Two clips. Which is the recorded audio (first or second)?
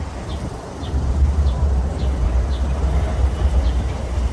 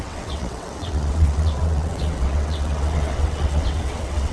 first